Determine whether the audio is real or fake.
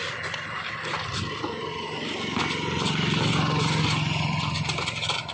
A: real